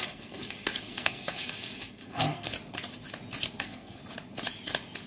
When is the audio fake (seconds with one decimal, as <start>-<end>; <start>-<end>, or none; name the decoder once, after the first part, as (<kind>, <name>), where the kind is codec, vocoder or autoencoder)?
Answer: 0.0-2.5 (codec, SNAC); 3.6-4.0